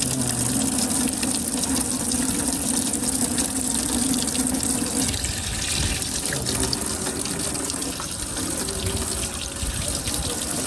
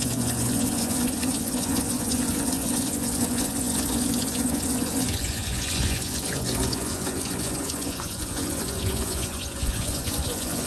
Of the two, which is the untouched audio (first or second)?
first